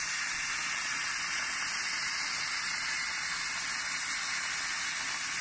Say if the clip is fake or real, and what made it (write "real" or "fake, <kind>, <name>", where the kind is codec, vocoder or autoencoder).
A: real